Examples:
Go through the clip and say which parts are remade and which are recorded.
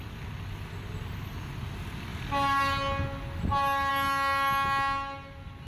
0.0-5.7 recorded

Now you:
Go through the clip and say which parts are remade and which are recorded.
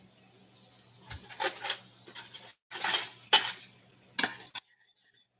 0.0-5.4 recorded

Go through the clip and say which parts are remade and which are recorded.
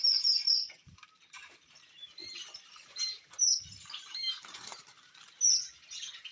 0.0-2.2 recorded; 2.2-2.9 remade; 2.9-4.1 recorded; 4.1-5.1 remade; 5.1-6.3 recorded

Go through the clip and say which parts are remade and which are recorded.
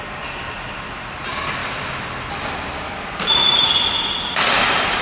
0.0-1.6 recorded; 1.6-4.1 remade; 4.1-5.0 recorded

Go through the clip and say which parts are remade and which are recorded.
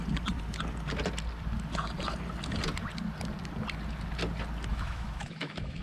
0.0-4.7 recorded; 4.7-5.8 remade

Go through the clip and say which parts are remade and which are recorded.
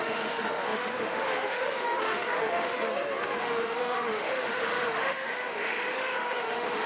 0.0-2.7 remade; 2.7-3.4 recorded; 3.4-6.9 remade